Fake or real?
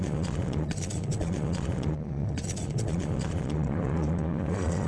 fake